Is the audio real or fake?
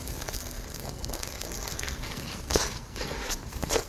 fake